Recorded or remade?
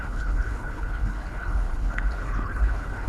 remade